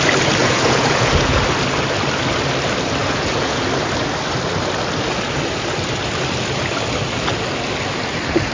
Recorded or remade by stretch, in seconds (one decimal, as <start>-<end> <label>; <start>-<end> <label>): 0.0-0.4 recorded; 0.4-1.4 remade; 1.4-3.0 recorded; 3.0-3.6 remade; 3.6-8.5 recorded